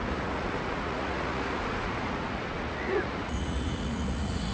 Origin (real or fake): fake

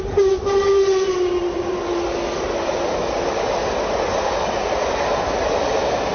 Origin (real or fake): real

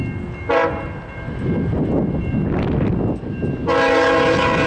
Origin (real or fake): real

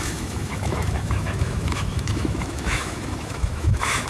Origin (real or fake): fake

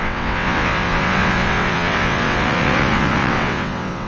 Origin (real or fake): fake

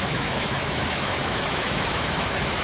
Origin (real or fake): fake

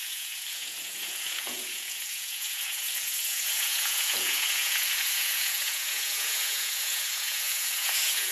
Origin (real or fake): fake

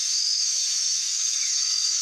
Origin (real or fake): fake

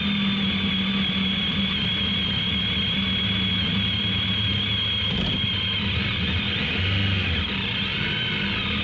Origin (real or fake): real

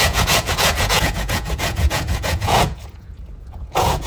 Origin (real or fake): fake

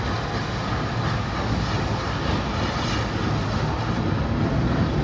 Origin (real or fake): real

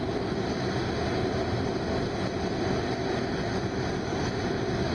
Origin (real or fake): real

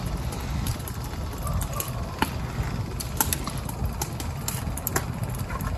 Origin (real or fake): real